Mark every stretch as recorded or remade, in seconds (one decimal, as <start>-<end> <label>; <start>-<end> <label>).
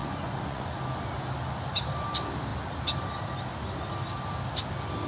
0.0-0.7 remade; 0.7-5.1 recorded